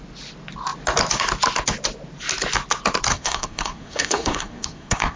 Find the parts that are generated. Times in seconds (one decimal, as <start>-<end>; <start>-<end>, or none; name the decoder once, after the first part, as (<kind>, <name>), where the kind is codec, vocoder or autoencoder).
3.1-5.2 (codec, SNAC)